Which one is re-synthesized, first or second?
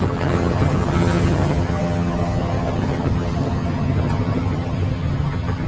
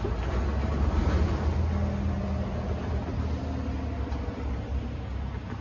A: first